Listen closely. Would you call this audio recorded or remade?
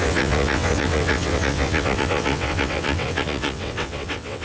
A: remade